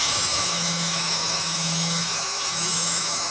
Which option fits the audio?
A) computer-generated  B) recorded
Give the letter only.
A